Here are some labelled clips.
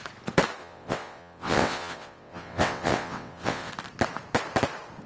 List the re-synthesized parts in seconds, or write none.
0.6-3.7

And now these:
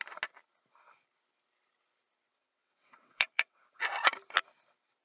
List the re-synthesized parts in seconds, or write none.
2.3-3.8

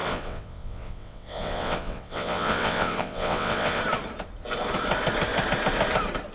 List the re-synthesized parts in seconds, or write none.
0.0-3.8